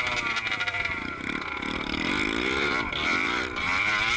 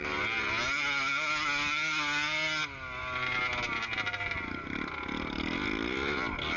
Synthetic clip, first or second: first